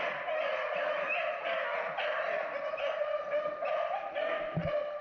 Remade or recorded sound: recorded